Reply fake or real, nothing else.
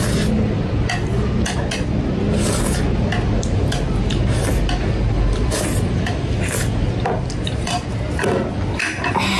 real